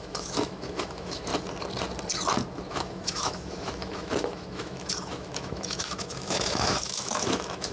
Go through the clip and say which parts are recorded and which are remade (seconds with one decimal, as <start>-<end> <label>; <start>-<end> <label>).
0.0-1.3 remade; 1.3-2.7 recorded; 2.7-7.7 remade